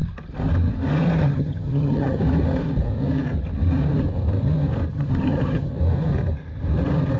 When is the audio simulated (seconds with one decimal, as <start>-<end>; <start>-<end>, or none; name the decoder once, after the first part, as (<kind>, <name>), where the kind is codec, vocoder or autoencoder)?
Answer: 1.2-2.2 (vocoder, HiFi-GAN); 4.9-5.7